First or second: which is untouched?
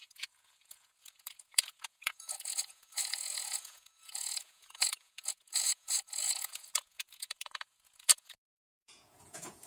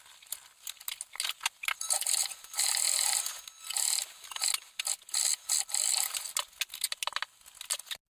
second